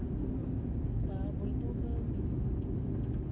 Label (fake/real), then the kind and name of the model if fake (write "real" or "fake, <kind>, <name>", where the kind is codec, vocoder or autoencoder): real